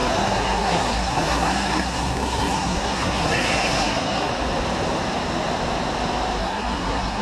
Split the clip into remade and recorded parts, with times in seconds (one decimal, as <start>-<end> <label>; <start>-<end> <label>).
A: 0.0-4.3 remade; 4.3-6.4 recorded; 6.4-7.2 remade